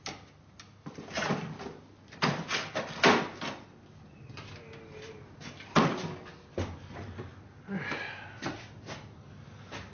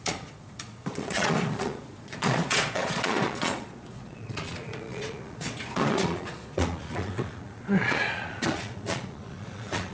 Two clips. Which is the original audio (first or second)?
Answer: first